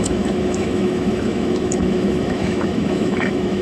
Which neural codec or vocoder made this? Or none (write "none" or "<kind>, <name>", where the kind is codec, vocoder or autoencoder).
autoencoder, DAC-VAE